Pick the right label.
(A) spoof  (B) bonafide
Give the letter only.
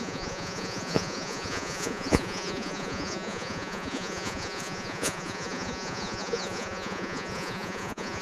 A